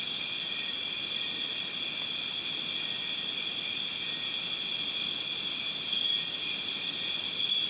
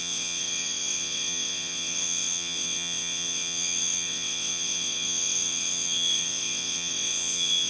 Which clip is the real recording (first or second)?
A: first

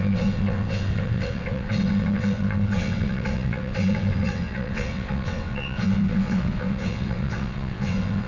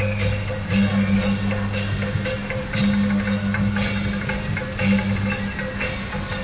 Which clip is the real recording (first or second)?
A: second